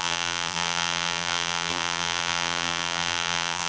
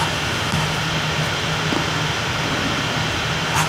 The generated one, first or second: first